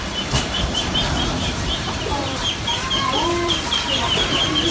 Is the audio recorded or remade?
remade